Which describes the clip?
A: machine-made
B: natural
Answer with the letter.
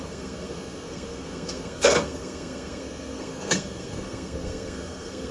A